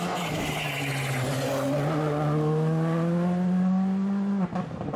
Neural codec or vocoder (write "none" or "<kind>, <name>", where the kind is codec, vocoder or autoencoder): none